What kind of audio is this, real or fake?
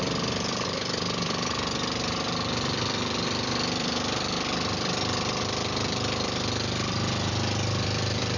fake